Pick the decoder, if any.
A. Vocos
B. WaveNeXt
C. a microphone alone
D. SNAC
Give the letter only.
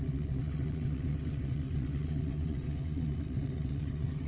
B